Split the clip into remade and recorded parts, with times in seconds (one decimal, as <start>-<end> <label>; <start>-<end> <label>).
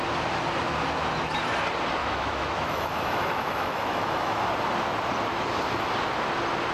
0.0-2.0 recorded; 2.0-4.4 remade; 4.4-6.7 recorded